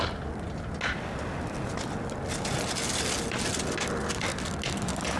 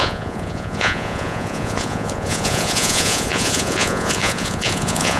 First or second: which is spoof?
second